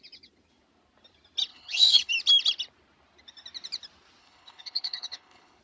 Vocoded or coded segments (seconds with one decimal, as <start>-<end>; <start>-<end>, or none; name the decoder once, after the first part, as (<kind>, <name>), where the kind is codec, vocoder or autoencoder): 1.5-2.1 (codec, HILCodec); 4.2-5.6